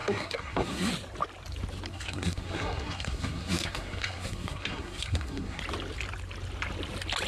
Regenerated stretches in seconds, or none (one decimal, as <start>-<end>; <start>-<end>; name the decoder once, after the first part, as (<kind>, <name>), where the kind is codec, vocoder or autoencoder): 0.0-0.9 (codec, SNAC); 1.9-5.6